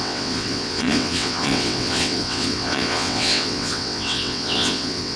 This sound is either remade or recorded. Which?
remade